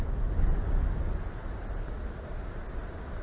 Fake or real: real